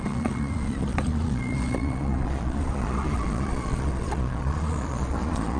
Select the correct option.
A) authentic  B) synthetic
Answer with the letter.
B